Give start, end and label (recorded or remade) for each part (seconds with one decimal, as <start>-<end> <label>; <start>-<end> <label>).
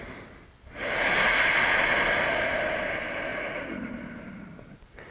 0.0-3.3 recorded; 3.3-3.9 remade; 3.9-5.1 recorded